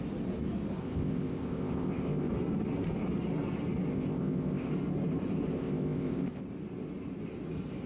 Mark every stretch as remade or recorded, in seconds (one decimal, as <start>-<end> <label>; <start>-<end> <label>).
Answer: 0.0-0.8 recorded; 0.8-2.3 remade; 2.3-3.9 recorded; 3.9-4.7 remade; 4.7-5.5 recorded; 5.5-6.4 remade; 6.4-7.9 recorded